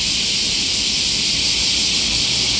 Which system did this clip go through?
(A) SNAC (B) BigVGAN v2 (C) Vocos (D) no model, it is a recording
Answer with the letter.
D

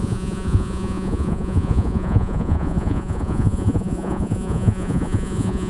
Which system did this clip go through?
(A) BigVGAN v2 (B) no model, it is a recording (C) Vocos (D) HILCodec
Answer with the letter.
C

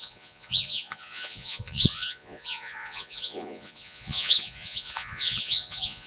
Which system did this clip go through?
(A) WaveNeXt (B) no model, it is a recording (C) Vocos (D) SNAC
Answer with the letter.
C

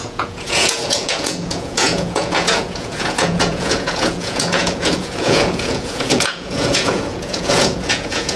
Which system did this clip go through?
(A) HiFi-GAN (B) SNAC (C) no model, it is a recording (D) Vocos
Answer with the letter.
D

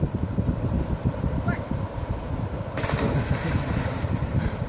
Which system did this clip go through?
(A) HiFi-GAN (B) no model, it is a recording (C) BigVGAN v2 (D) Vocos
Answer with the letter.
B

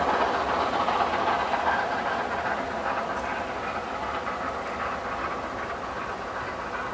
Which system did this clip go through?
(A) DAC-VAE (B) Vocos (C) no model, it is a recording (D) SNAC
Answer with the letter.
C